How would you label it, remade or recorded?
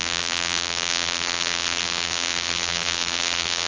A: remade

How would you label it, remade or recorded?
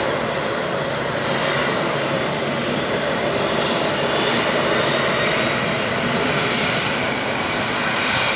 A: remade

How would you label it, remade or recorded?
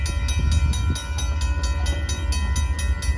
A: recorded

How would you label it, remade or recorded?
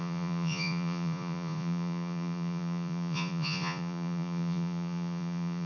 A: remade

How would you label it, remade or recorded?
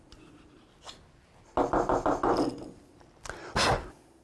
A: recorded